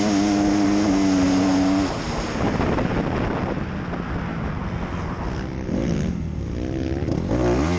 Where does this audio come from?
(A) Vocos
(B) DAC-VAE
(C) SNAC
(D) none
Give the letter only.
D